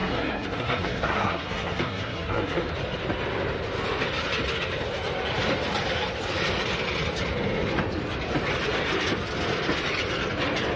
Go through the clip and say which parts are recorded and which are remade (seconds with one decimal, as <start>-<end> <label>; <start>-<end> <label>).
0.0-2.7 remade; 2.7-10.8 recorded